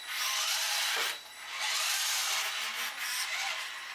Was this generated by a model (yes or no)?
no